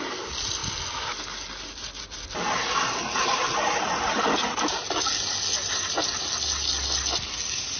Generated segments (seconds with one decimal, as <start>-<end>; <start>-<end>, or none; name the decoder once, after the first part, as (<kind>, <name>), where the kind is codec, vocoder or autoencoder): none